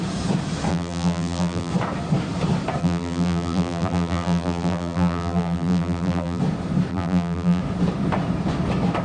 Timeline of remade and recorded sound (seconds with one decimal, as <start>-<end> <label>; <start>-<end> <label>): 0.0-0.7 recorded; 0.7-1.7 remade; 1.7-2.8 recorded; 2.8-6.4 remade; 6.4-6.9 recorded; 6.9-7.6 remade; 7.6-9.0 recorded